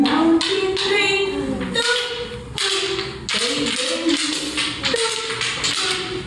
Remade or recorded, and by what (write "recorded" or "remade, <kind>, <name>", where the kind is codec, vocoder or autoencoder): recorded